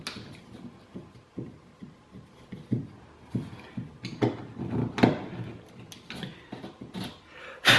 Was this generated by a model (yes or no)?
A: no